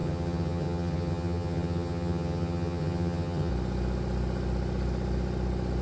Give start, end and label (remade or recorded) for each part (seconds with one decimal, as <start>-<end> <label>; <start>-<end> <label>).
0.0-3.5 remade; 3.5-5.8 recorded